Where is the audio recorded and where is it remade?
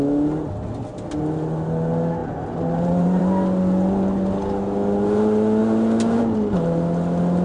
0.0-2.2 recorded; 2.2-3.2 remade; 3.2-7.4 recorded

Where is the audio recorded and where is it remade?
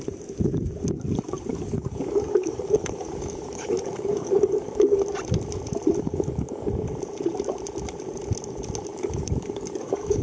0.0-1.5 recorded; 1.5-5.0 remade; 5.0-6.0 recorded; 6.0-6.7 remade; 6.7-8.9 recorded; 8.9-10.2 remade